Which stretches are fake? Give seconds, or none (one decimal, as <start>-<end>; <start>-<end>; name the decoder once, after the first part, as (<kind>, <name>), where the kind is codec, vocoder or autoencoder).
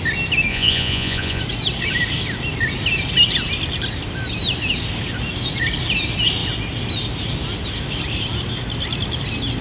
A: 0.5-1.4 (vocoder, Vocos)